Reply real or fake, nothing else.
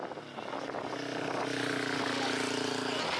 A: real